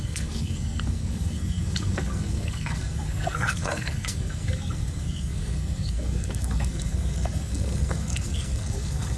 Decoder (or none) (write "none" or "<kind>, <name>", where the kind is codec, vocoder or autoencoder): codec, SNAC